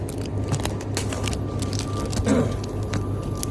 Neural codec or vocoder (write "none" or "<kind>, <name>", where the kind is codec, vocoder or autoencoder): none